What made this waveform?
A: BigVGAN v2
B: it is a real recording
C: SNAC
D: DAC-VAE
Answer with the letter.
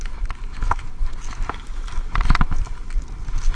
B